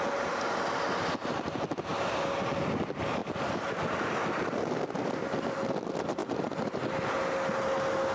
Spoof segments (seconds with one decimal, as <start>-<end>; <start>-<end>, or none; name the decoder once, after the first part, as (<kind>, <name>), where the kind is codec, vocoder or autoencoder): 3.2-5.5 (vocoder, BigVGAN v2); 6.2-6.9